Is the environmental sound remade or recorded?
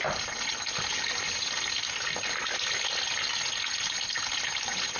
recorded